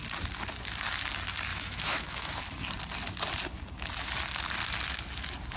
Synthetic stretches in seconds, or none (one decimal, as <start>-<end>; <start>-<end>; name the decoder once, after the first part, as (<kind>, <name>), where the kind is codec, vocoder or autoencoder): 1.5-2.4 (autoencoder, DAC-VAE)